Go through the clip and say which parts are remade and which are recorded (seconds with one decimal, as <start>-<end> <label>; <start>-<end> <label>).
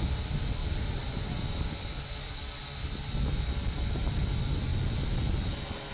0.0-5.9 recorded